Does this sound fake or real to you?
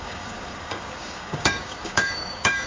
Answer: fake